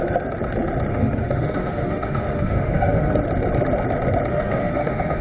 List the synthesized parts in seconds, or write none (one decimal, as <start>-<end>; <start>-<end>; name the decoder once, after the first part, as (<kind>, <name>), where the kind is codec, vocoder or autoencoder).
0.9-3.2 (autoencoder, DAC-VAE); 4.3-5.2